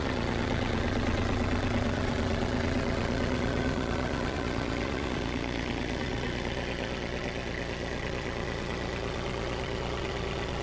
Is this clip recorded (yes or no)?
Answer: no